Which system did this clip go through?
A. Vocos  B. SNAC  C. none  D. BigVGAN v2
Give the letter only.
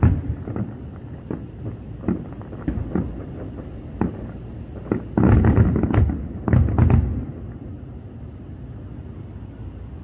C